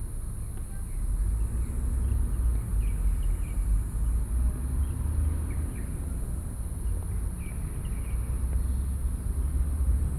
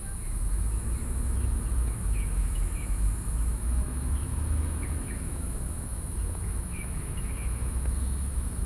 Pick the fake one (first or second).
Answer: second